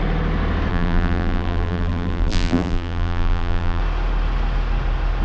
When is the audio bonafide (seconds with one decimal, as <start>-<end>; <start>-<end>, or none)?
0.0-0.7; 3.8-5.2